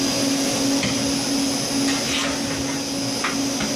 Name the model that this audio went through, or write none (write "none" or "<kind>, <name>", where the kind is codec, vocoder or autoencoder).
none